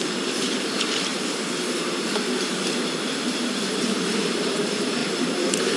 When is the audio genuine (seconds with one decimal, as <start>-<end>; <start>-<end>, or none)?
none